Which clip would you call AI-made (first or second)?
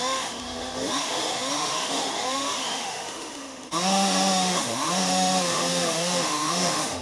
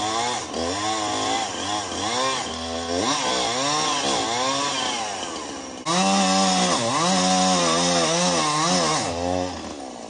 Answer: first